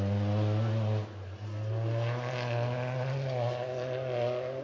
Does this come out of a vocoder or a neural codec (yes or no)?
no